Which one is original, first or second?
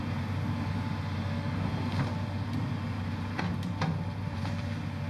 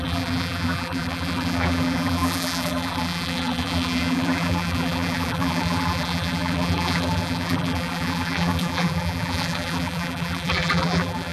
first